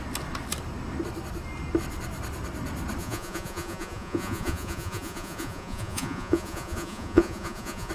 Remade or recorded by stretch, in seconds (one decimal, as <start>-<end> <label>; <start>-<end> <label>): 0.0-3.0 recorded; 3.0-7.9 remade